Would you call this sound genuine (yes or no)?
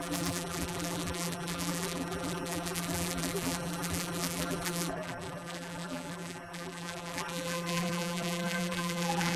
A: no